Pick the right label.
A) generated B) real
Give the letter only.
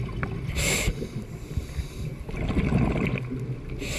B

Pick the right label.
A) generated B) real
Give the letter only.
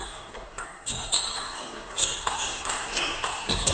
A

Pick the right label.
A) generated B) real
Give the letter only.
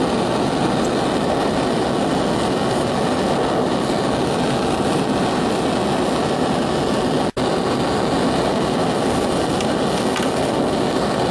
B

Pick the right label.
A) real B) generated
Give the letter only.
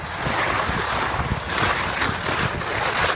A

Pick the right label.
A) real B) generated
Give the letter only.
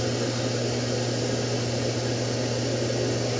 A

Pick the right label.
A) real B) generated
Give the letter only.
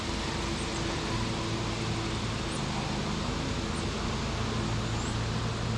A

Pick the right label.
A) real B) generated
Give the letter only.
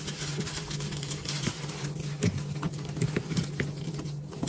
A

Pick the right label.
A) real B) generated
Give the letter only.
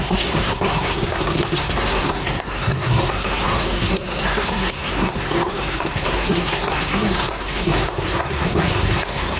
B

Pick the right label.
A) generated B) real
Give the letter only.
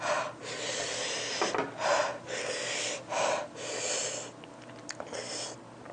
B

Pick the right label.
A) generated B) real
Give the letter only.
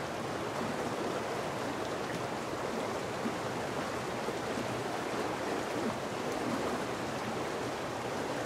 A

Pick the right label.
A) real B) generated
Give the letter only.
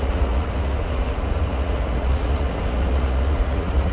B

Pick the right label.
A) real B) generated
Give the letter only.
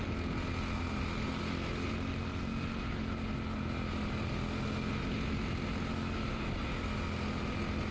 A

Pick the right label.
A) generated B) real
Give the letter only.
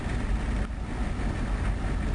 B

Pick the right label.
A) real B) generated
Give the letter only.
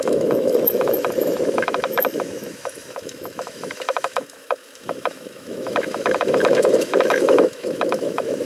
B